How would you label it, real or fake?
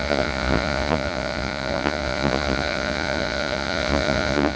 fake